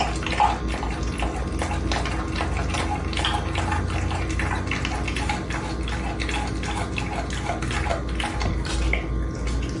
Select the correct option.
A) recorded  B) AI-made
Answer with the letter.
A